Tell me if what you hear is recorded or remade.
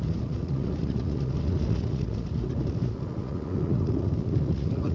remade